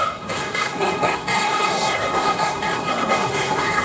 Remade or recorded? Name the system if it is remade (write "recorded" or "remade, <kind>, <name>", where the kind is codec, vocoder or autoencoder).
remade, codec, SNAC